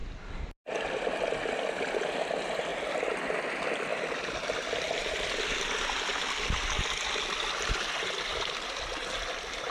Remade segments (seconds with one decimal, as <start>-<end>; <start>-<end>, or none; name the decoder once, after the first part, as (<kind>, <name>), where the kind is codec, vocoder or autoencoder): 3.9-6.8 (vocoder, BigVGAN v2); 8.3-9.2